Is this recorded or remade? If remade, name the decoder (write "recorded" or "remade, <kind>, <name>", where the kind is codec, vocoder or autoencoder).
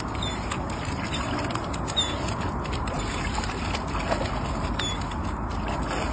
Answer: recorded